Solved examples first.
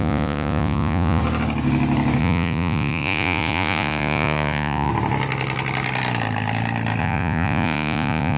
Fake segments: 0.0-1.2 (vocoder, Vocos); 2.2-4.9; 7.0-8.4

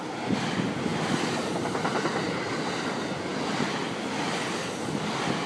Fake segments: none

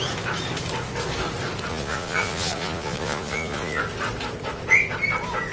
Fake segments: 1.7-3.8 (vocoder, Vocos)

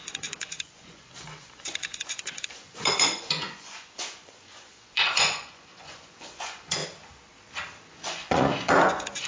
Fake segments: 0.0-6.8 (vocoder, Vocos); 7.9-9.3

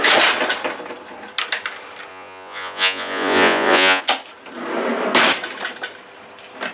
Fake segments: 2.1-4.0 (vocoder, Vocos)

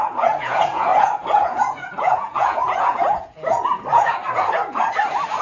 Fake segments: 0.0-4.2 (vocoder, Vocos)

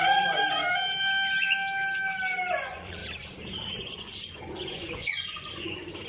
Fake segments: 0.0-0.6 (vocoder, Vocos); 2.6-3.0; 3.7-6.1